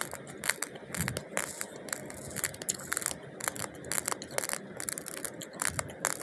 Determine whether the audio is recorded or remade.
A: recorded